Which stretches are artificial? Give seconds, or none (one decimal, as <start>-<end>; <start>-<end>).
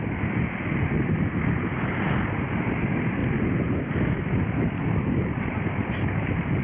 none